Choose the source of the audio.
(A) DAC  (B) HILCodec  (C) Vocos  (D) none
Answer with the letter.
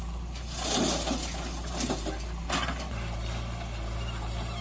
D